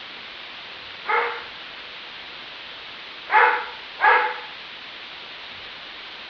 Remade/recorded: recorded